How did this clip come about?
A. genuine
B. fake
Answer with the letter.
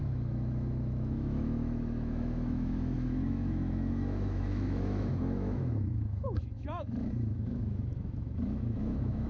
B